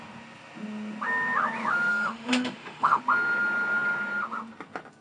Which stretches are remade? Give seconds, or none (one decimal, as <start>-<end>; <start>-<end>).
1.9-3.0